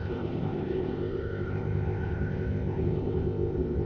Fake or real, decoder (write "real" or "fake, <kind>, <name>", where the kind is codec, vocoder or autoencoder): fake, codec, ZipCodec